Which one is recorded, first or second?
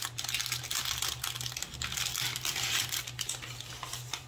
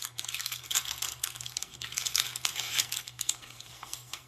first